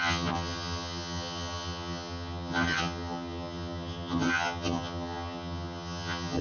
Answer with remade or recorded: remade